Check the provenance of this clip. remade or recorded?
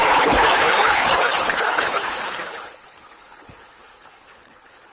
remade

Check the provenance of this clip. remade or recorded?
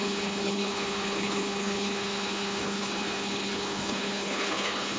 remade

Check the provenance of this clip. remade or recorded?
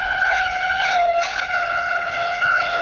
remade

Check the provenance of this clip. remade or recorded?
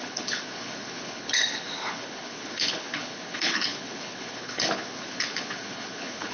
remade